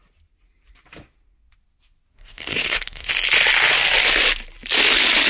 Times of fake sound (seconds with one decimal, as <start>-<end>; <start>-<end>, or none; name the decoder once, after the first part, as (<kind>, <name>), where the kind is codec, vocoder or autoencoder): 2.1-3.1 (codec, SNAC)